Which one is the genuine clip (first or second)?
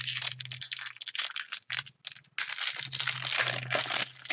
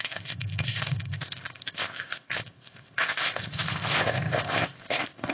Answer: first